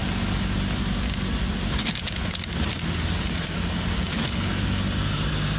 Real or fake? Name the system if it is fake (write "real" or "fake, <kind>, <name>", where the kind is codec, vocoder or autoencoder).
real